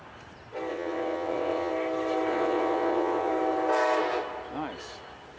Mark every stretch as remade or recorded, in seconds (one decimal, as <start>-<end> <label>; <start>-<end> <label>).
0.0-0.7 recorded; 0.7-1.7 remade; 1.7-2.3 recorded; 2.3-3.3 remade; 3.3-5.4 recorded